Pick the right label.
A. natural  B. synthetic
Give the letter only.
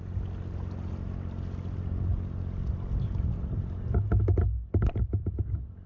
A